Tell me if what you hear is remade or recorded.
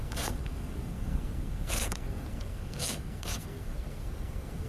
remade